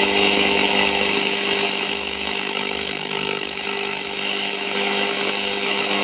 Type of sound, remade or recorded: remade